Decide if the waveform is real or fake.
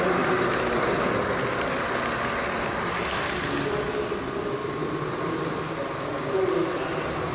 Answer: real